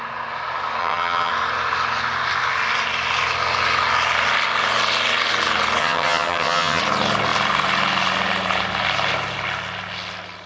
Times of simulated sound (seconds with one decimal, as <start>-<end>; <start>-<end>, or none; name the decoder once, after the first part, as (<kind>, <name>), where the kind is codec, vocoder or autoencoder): 0.8-1.3 (vocoder, HiFi-GAN); 5.8-6.8